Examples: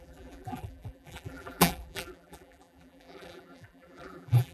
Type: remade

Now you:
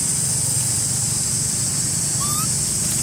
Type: recorded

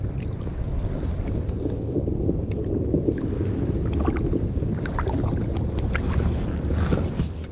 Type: recorded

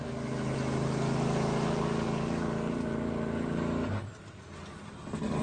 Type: recorded